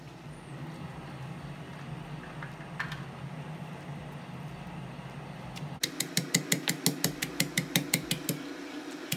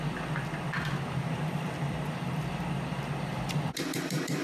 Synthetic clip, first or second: second